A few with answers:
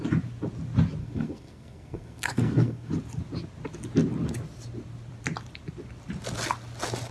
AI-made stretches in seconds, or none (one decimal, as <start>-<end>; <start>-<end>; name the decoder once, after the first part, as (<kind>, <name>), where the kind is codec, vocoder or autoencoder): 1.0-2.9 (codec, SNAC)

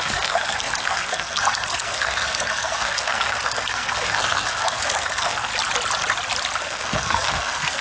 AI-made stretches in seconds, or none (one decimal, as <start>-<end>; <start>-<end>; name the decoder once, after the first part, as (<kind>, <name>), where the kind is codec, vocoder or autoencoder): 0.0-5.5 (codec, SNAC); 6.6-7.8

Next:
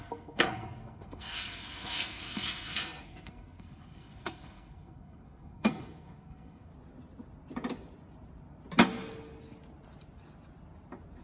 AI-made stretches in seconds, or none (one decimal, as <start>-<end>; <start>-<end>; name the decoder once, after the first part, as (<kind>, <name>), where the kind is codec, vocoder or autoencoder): 0.0-6.7 (codec, SNAC)

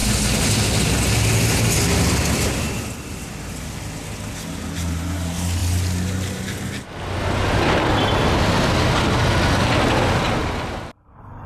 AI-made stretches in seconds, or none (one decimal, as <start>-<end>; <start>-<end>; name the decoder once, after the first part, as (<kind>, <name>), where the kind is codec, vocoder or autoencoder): 10.4-11.5 (vocoder, BigVGAN v2)

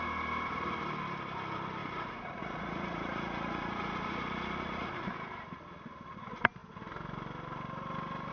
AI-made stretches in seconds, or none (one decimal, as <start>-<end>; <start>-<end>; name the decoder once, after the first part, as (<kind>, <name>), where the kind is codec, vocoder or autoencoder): 1.8-5.1 (vocoder, Vocos)

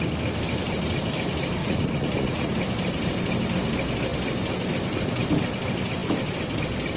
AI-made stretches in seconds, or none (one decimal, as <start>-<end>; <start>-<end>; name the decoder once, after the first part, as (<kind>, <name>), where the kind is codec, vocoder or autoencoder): 1.6-2.5 (vocoder, Vocos)

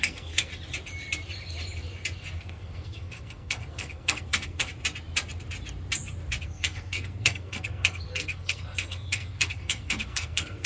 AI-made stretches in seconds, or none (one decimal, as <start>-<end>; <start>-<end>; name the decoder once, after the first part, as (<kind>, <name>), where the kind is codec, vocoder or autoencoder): 0.0-0.5 (codec, SNAC); 2.4-4.7; 6.4-10.7